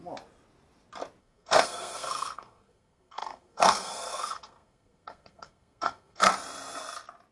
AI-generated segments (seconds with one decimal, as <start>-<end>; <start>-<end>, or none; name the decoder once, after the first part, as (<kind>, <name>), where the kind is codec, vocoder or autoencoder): 1.2-6.3 (codec, SNAC)